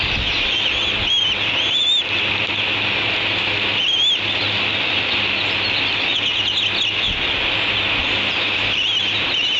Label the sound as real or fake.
real